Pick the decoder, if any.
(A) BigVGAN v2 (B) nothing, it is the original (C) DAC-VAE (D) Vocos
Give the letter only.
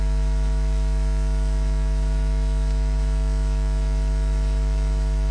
C